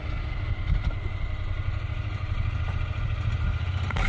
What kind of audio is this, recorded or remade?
recorded